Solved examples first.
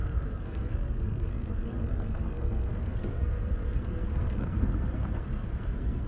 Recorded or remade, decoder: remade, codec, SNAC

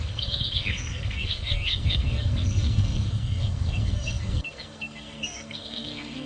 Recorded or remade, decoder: remade, codec, SNAC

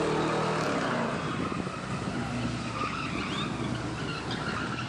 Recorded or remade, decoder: recorded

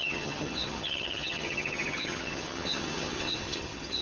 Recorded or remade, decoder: remade, vocoder, HiFi-GAN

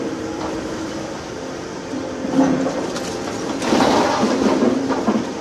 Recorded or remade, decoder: remade, vocoder, BigVGAN v2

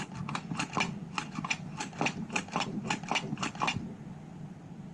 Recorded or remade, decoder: recorded